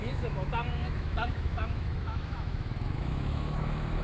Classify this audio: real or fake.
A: fake